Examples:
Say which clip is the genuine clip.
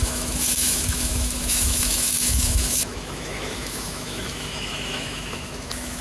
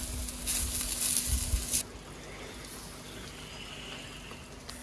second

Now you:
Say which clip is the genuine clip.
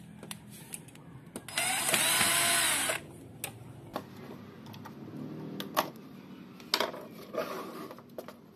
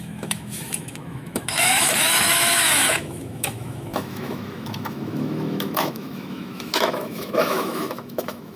first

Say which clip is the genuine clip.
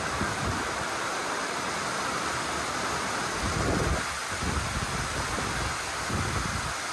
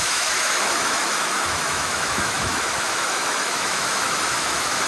first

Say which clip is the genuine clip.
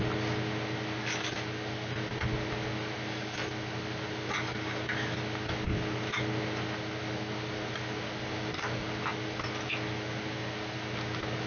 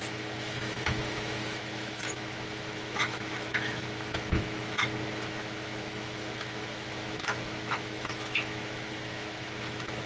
first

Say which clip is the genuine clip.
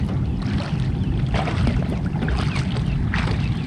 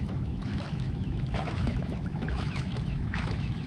first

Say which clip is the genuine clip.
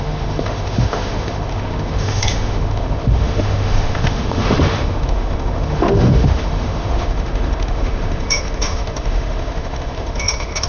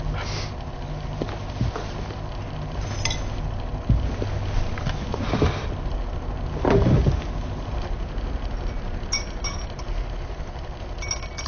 second